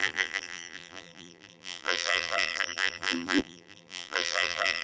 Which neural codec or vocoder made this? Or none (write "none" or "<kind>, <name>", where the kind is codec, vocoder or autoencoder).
vocoder, BigVGAN v2